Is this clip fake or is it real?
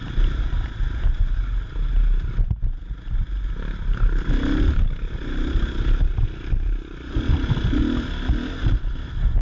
real